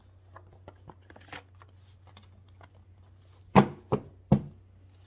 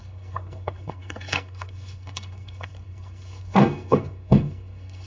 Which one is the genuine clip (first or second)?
first